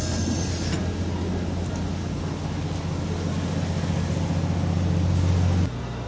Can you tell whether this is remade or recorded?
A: recorded